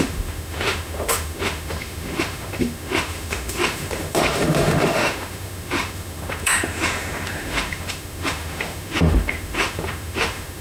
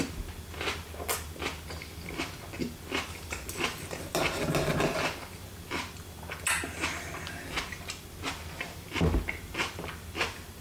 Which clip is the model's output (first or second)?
first